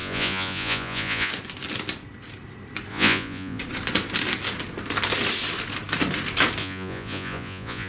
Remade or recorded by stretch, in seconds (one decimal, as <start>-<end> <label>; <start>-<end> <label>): 0.0-1.3 remade; 1.3-2.9 recorded; 2.9-3.6 remade; 3.6-6.6 recorded; 6.6-7.9 remade